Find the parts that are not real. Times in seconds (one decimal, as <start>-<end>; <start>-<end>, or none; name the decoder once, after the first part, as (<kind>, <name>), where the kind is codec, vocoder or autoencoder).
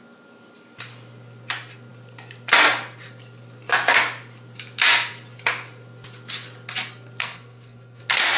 7.2-8.0 (codec, SNAC)